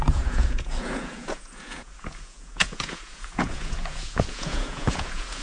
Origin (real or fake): fake